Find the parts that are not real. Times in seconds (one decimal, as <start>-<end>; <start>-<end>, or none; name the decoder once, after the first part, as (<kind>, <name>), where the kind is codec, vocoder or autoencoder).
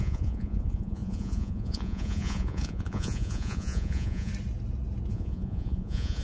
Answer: 0.0-4.3 (vocoder, Vocos); 5.1-6.2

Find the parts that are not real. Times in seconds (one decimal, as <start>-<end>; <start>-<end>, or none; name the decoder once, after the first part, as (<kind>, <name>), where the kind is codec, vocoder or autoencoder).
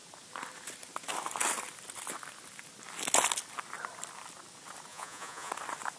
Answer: 4.9-5.5 (vocoder, Vocos)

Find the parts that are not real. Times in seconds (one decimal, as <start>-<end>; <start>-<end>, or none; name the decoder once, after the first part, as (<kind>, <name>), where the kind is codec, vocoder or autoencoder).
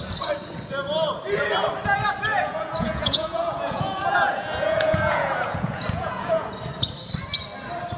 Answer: 2.3-6.5 (vocoder, Vocos)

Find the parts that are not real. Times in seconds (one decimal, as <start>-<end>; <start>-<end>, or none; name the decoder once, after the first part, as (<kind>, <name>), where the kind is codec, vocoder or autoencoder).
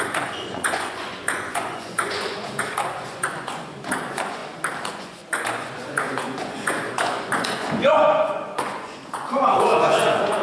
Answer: 0.0-4.4 (vocoder, Vocos); 4.9-10.4